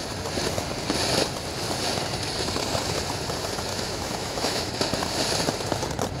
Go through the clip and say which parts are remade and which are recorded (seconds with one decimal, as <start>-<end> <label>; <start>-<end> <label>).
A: 0.0-3.7 recorded; 3.7-4.7 remade; 4.7-6.2 recorded